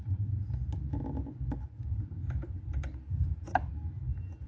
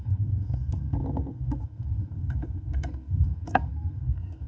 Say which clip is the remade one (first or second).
second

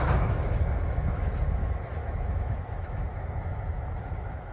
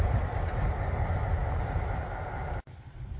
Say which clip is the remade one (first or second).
first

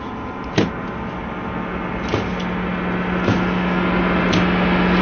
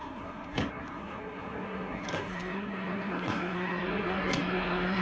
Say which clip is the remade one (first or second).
second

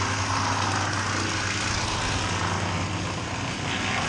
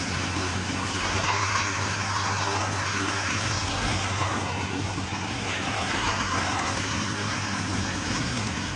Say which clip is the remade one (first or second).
second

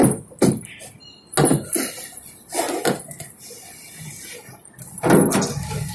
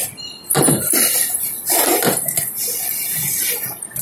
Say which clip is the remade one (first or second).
second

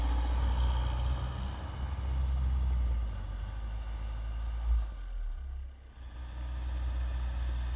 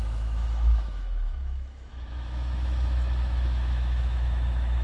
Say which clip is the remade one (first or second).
second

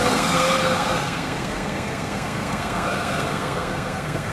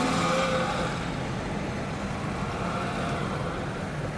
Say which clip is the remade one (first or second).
first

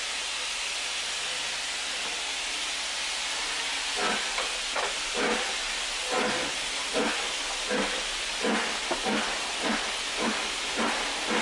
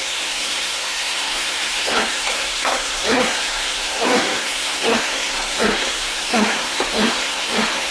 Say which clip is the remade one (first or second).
second